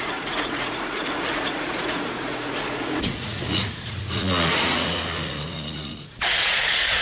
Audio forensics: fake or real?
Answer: fake